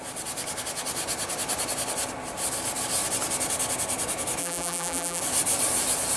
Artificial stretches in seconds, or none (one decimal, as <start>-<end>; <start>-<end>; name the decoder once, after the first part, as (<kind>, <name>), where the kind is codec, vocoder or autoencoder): 4.4-5.2 (vocoder, BigVGAN v2)